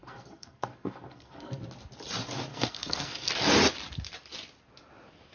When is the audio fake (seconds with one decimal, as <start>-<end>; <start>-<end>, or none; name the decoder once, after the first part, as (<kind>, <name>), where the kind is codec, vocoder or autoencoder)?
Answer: 0.0-1.6 (codec, SNAC); 2.5-3.3